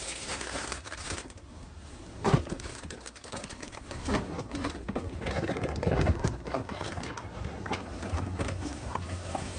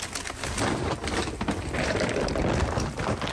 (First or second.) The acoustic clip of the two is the second